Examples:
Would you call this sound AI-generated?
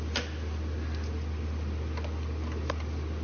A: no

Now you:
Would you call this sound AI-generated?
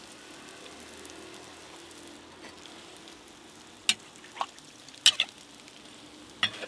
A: no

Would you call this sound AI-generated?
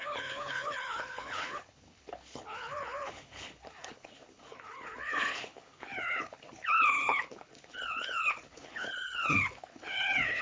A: yes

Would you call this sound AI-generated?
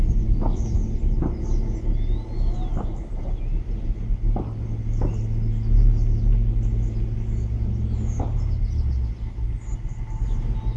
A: no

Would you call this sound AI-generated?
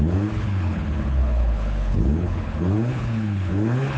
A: yes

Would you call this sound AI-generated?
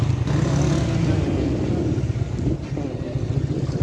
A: no